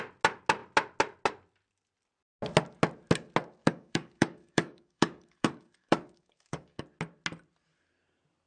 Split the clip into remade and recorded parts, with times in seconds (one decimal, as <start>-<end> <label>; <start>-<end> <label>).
0.0-3.6 recorded; 3.6-6.8 remade; 6.8-8.5 recorded